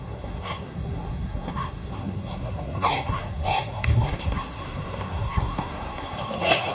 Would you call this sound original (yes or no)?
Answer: no